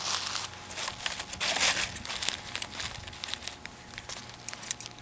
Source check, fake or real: real